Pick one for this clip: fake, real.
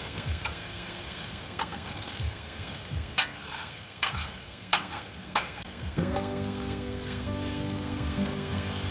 fake